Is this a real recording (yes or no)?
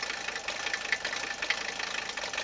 yes